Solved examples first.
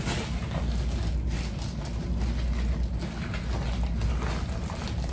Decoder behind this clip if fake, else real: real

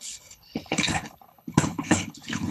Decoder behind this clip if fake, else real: fake, codec, HILCodec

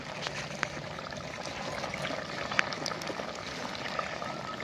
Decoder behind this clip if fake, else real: real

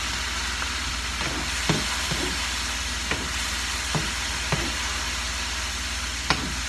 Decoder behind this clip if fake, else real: real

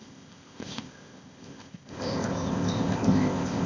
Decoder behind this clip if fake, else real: fake, codec, ZipCodec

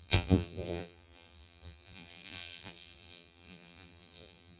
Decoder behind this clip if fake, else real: fake, vocoder, BigVGAN v2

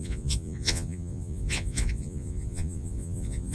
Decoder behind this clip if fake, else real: fake, vocoder, Vocos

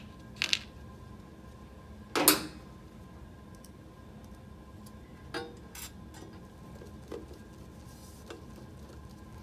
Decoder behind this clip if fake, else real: real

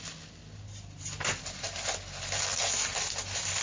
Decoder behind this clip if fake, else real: fake, vocoder, BigVGAN v2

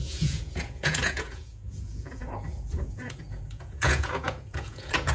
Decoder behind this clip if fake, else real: fake, vocoder, Vocos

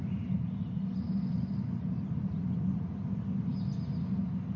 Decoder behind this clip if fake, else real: real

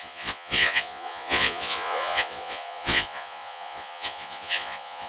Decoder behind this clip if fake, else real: fake, vocoder, Vocos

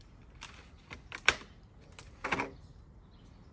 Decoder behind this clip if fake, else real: real